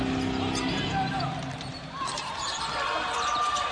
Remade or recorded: recorded